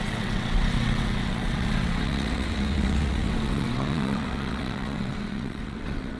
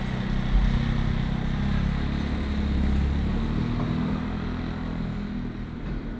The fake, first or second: first